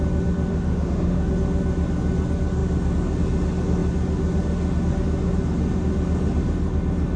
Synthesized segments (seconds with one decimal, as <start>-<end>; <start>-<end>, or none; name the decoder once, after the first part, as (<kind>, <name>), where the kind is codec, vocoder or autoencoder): 0.5-1.3 (autoencoder, DAC-VAE)